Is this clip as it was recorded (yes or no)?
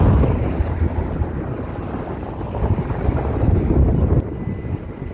yes